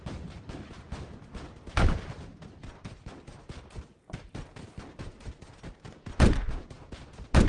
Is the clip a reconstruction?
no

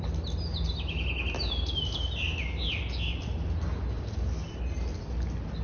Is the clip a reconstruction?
no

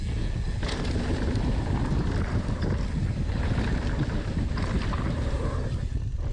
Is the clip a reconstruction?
no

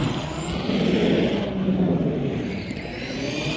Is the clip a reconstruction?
no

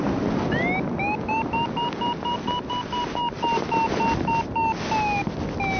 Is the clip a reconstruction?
no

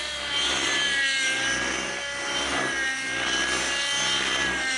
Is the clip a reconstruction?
no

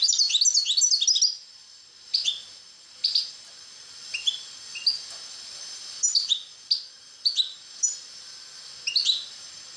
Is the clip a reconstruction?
no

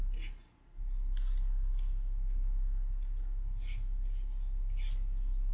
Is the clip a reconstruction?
no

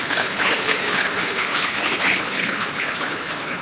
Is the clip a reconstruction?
yes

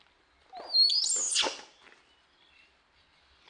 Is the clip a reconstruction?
no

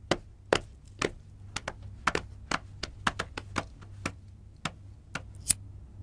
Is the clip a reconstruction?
no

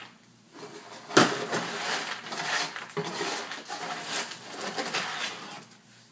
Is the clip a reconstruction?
no